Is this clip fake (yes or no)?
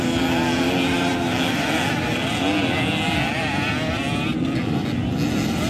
no